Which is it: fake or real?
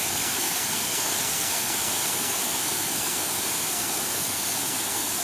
fake